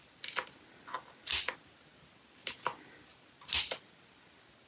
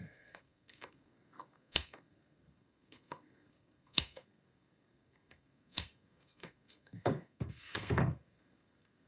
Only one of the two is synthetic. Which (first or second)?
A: second